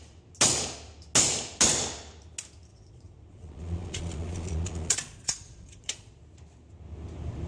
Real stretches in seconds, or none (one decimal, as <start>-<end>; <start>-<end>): 0.0-2.7; 6.1-7.5